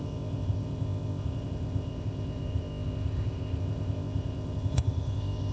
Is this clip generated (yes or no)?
yes